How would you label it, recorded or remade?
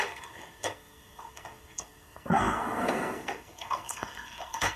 remade